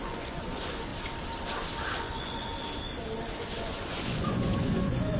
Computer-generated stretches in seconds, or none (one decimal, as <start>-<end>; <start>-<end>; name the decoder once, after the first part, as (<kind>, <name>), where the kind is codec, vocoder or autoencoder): 0.0-0.9 (vocoder, Vocos); 2.0-2.5; 3.4-5.2